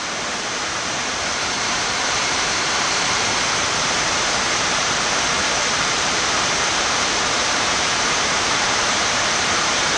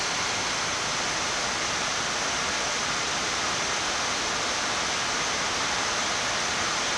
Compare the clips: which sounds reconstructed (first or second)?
first